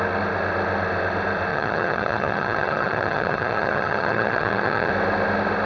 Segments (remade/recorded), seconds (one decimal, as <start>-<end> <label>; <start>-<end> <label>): 0.0-1.5 recorded; 1.5-4.9 remade; 4.9-5.7 recorded